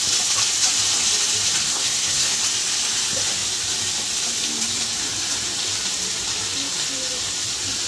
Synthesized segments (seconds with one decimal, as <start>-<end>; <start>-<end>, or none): 1.6-2.4